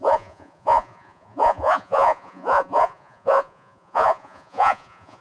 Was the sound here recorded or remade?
remade